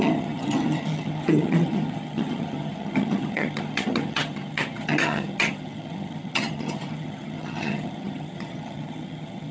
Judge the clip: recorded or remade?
remade